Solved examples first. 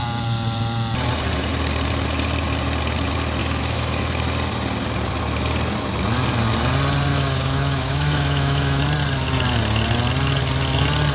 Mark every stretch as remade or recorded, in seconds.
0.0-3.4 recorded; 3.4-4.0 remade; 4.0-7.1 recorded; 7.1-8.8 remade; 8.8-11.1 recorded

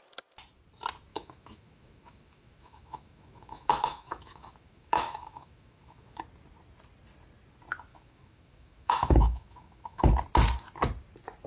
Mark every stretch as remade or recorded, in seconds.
0.0-1.1 recorded; 1.1-6.2 remade; 6.2-7.9 recorded; 7.9-10.1 remade; 10.1-11.5 recorded

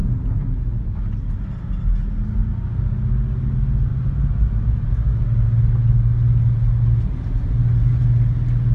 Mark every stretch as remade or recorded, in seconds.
0.0-8.7 recorded

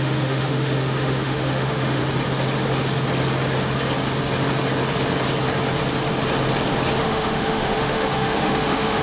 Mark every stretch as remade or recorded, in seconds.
0.0-2.0 remade; 2.0-7.0 recorded; 7.0-9.0 remade

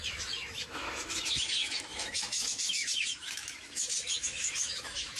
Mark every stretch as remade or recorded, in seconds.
0.0-5.2 remade

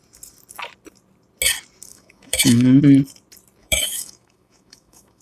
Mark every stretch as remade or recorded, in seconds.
0.0-1.9 recorded; 1.9-2.8 remade; 2.8-3.6 recorded; 3.6-5.2 remade

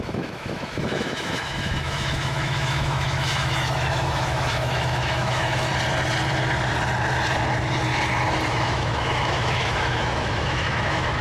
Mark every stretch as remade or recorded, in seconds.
0.0-5.7 remade; 5.7-8.5 recorded; 8.5-11.2 remade